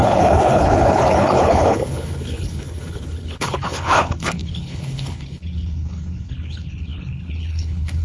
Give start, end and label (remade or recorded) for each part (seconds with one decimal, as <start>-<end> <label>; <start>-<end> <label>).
0.0-8.0 remade

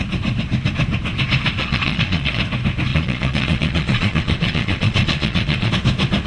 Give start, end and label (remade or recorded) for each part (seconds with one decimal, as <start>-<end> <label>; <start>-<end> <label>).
0.0-1.6 recorded; 1.6-2.4 remade; 2.4-2.9 recorded; 2.9-5.7 remade; 5.7-6.3 recorded

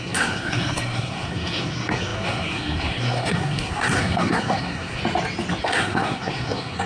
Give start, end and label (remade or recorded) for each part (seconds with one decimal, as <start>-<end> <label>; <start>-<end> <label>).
0.0-5.0 remade; 5.0-5.6 recorded; 5.6-6.9 remade

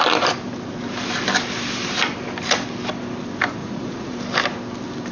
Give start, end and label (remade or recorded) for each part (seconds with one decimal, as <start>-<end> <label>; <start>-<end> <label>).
0.0-3.6 recorded; 3.6-4.2 remade; 4.2-5.1 recorded